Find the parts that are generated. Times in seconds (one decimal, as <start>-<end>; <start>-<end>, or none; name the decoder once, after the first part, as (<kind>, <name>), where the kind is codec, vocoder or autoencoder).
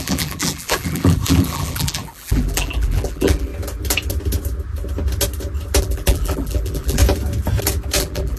0.0-3.5 (vocoder, BigVGAN v2); 5.8-7.0; 8.0-8.4